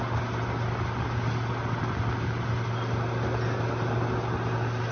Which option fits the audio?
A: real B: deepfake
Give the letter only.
A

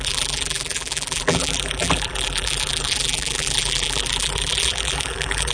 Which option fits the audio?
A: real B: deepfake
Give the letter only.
B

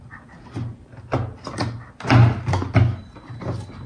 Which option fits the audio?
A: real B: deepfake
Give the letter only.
A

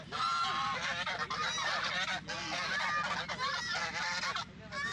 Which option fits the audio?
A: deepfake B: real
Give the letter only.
B